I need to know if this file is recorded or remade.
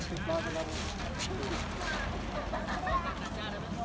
recorded